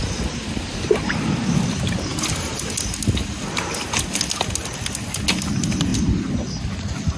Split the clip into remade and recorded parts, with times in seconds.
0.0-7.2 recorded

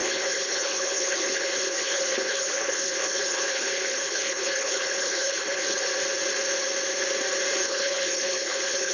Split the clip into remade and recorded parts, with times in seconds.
0.0-5.9 remade; 5.9-7.6 recorded; 7.6-8.9 remade

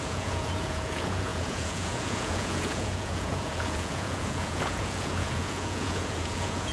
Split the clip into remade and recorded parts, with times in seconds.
0.0-6.7 remade

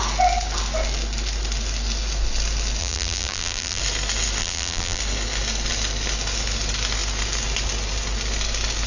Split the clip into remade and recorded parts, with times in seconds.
0.0-2.8 recorded; 2.8-3.8 remade; 3.8-4.4 recorded; 4.4-5.0 remade; 5.0-8.9 recorded